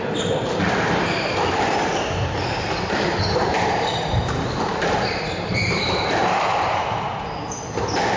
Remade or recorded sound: remade